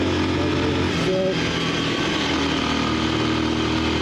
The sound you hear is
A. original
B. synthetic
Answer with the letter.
A